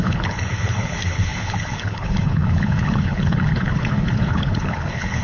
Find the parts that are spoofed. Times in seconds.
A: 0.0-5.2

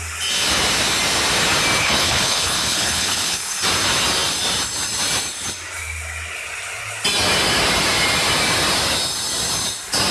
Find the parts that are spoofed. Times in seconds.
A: 1.8-3.6

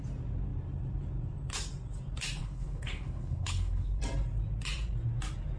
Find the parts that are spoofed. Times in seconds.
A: 2.4-4.0

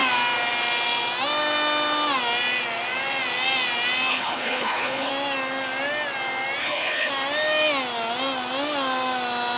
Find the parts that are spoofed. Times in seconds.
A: 4.1-5.1; 6.6-7.1

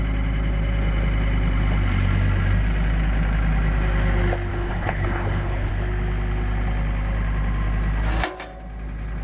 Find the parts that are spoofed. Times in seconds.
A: 4.5-5.7